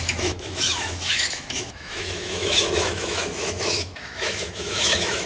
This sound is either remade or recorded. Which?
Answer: remade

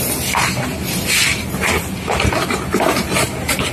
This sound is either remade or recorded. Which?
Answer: recorded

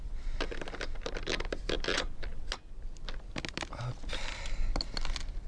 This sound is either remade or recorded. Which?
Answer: recorded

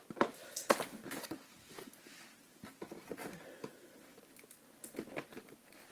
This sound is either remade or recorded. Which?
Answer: recorded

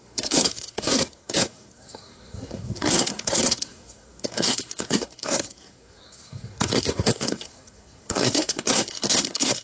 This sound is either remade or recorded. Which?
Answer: remade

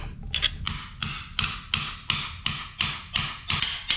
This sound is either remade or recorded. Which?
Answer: recorded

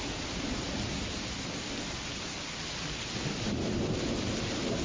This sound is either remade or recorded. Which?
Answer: recorded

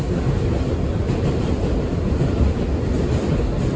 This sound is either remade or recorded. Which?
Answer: recorded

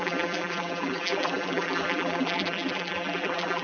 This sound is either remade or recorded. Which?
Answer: remade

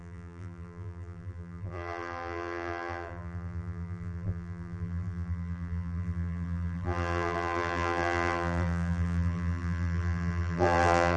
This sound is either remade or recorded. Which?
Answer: remade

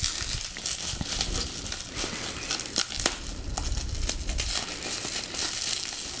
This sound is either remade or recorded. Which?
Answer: recorded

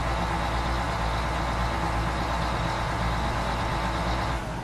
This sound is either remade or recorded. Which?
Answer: recorded